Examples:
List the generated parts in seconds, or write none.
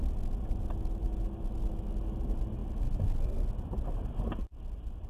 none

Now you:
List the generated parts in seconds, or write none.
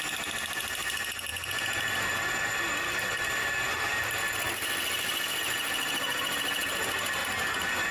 none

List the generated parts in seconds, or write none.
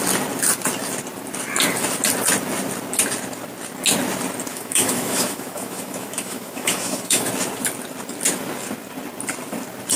4.5-7.3 (autoencoder, DAC-VAE)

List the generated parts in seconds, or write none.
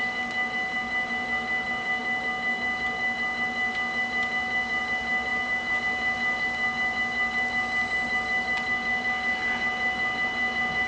5.3-5.8 (autoencoder, DAC-VAE)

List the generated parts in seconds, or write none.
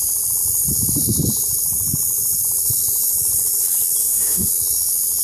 4.0-4.5 (autoencoder, DAC-VAE)